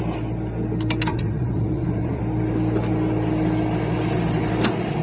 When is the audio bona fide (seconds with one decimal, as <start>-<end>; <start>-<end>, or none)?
0.0-1.1; 2.2-5.0